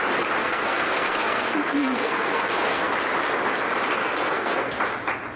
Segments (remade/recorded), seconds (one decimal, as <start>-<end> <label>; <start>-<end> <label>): 0.0-0.4 recorded; 0.4-2.9 remade; 2.9-4.0 recorded; 4.0-4.8 remade; 4.8-5.4 recorded